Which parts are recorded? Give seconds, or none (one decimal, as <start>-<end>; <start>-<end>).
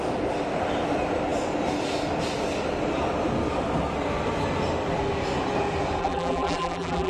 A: 0.0-6.0